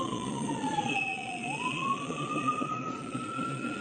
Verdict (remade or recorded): remade